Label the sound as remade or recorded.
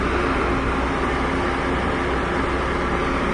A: recorded